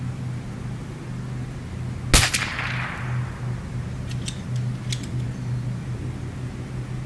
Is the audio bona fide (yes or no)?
yes